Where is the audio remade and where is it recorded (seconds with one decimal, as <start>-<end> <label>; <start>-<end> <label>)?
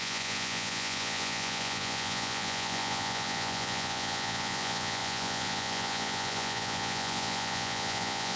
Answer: 0.0-8.4 remade